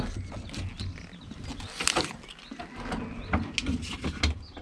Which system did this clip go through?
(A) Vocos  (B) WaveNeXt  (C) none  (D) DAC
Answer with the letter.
C